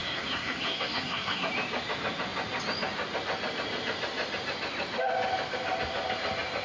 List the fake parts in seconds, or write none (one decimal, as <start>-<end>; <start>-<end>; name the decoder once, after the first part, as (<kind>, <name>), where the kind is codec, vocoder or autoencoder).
0.0-1.5 (codec, SNAC)